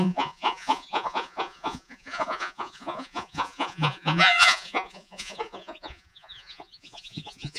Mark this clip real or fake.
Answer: fake